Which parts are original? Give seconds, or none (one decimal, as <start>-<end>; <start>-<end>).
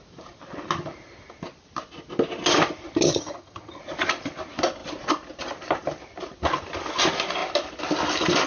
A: 0.0-3.1; 3.8-8.5